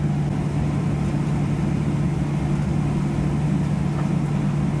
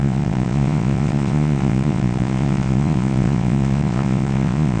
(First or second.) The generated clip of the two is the second